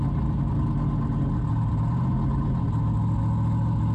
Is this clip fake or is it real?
real